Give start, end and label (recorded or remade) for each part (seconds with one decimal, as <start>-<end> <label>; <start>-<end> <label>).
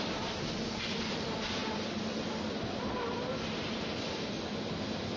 0.0-5.2 recorded